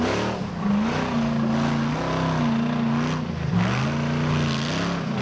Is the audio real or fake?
real